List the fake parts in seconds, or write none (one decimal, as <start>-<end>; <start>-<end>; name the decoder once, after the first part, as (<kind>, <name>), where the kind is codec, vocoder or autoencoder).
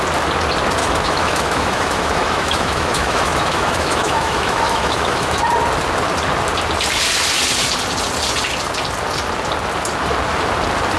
0.8-5.4 (autoencoder, DAC-VAE)